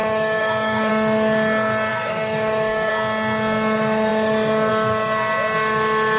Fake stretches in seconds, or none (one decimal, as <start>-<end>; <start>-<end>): 0.0-0.9; 1.9-2.9